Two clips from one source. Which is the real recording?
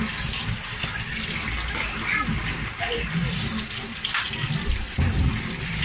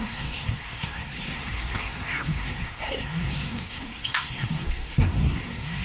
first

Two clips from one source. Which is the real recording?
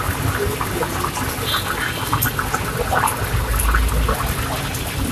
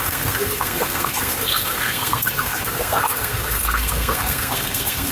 first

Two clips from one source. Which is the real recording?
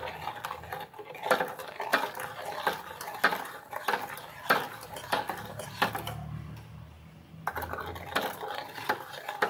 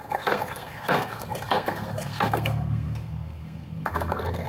first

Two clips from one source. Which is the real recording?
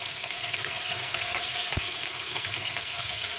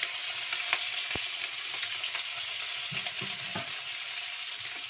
second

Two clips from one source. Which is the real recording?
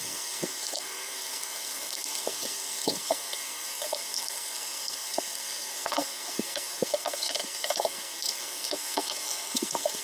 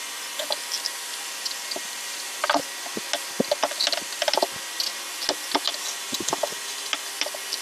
second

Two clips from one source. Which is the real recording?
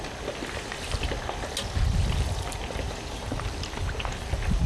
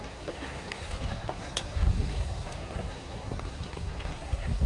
first